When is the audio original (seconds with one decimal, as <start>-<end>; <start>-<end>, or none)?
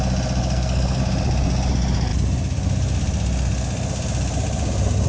0.0-0.4; 1.0-5.1